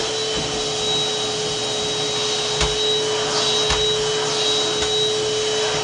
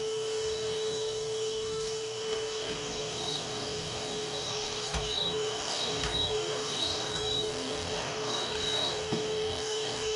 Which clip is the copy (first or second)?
second